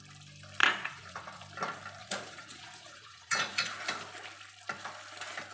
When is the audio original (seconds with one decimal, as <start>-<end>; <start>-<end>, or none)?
0.0-0.6; 1.4-2.0; 3.8-5.5